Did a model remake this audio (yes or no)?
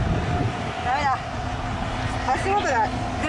no